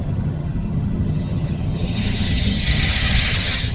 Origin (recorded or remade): remade